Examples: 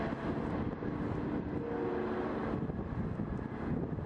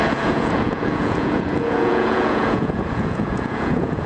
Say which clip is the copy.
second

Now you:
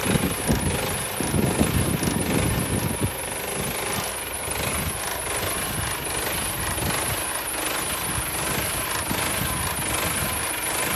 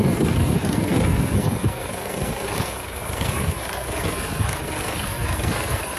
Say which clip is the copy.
second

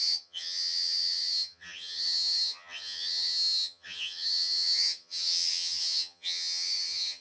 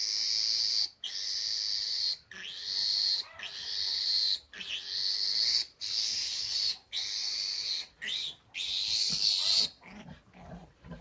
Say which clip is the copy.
first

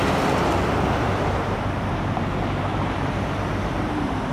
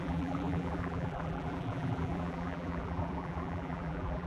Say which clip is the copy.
second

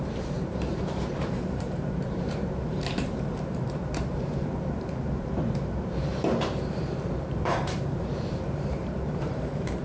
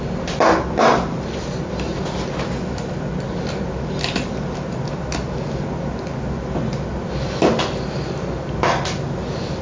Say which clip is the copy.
first